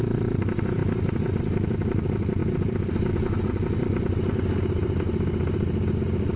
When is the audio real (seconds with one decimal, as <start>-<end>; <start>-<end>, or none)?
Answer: 0.0-6.4